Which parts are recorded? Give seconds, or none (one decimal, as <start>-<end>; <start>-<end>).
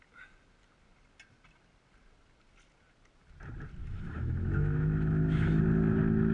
0.0-3.8; 5.6-6.3